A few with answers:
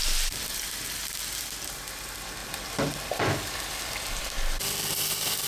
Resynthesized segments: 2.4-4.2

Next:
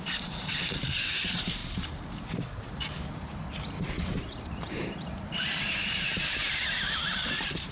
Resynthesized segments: 0.0-1.6; 2.9-3.4; 5.0-7.7